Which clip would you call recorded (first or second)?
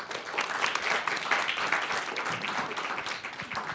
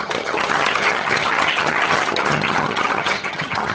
first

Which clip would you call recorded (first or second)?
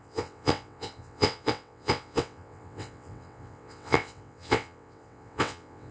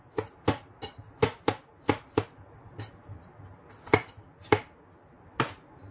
second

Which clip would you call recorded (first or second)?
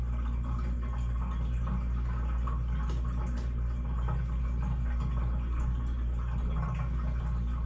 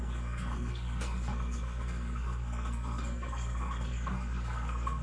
first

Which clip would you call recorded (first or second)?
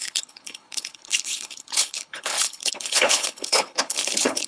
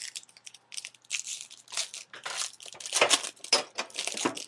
second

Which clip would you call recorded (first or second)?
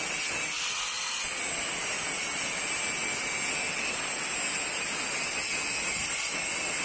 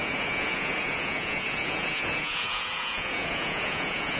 first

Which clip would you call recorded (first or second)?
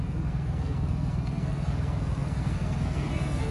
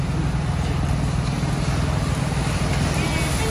second